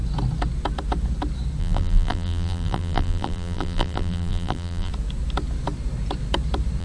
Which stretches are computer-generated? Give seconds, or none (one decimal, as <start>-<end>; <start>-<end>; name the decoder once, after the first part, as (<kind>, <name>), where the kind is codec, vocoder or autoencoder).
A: 1.6-4.9 (vocoder, BigVGAN v2)